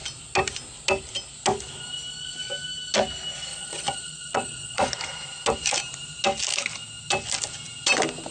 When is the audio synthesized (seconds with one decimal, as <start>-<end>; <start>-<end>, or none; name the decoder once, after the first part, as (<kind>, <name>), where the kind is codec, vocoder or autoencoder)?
3.5-4.9 (vocoder, Vocos)